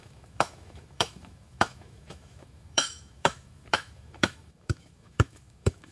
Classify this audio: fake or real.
fake